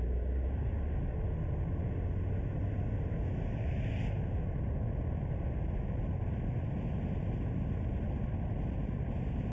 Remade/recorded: recorded